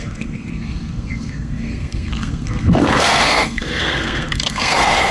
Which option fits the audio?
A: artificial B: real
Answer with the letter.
A